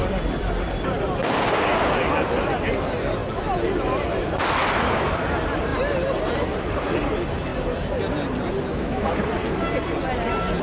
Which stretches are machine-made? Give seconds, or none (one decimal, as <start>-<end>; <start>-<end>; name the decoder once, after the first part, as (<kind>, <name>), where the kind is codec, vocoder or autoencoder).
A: 8.7-9.2 (autoencoder, DAC-VAE)